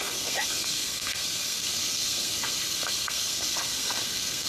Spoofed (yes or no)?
yes